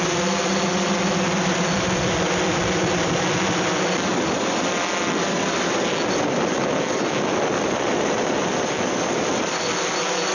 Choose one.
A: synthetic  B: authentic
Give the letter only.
A